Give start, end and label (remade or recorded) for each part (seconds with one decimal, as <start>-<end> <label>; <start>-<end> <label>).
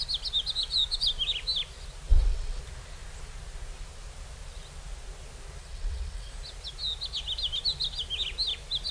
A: 0.0-2.1 recorded; 2.1-2.6 remade; 2.6-5.6 recorded; 5.6-6.3 remade; 6.3-8.9 recorded